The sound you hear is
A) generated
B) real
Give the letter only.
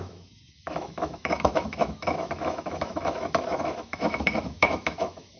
A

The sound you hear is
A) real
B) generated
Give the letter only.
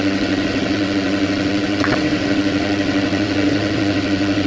B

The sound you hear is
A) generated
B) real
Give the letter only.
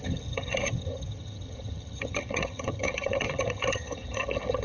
A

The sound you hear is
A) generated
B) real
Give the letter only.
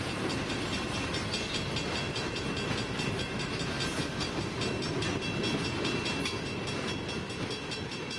B